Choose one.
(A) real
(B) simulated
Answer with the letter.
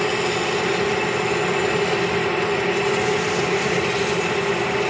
A